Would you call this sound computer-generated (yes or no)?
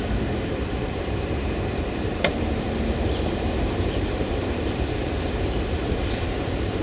yes